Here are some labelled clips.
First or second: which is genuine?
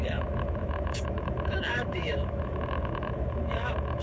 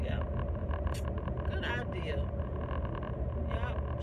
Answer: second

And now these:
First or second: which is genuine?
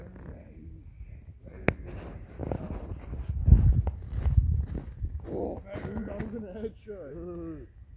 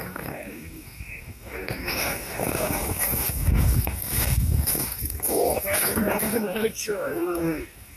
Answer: first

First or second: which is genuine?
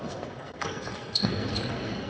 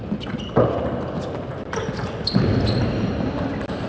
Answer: second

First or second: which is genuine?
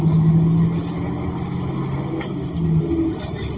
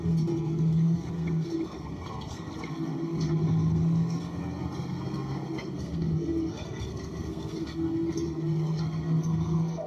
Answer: first